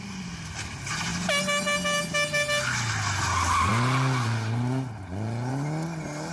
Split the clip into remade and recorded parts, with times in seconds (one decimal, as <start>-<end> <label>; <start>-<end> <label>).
0.0-6.3 recorded